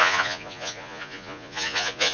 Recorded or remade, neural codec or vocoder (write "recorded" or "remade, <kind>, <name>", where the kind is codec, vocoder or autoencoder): remade, vocoder, Vocos